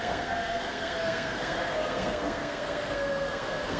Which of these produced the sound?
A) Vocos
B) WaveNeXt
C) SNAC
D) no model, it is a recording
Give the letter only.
C